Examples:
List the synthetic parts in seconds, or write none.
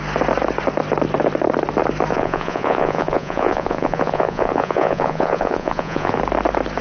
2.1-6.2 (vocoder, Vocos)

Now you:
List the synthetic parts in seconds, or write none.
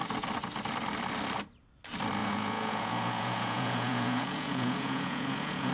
2.2-5.7 (vocoder, Vocos)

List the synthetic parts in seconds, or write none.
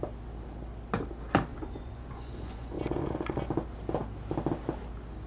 1.5-3.5 (vocoder, Vocos)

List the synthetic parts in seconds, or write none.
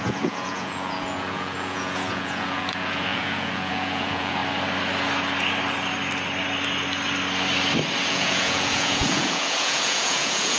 0.0-4.4 (vocoder, Vocos); 8.1-10.6